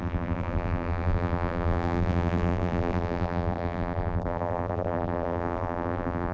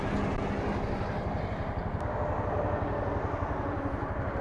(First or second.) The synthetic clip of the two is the first